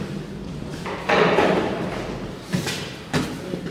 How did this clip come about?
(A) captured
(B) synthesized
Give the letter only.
B